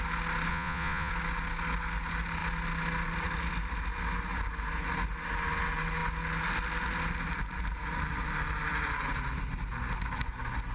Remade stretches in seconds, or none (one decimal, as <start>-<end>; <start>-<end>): 0.5-1.1